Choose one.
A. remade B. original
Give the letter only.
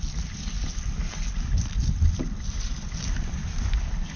B